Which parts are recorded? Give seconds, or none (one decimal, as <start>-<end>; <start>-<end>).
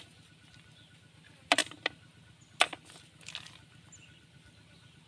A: 0.0-5.1